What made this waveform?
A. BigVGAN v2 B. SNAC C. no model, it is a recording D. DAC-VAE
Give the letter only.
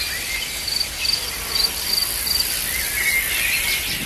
C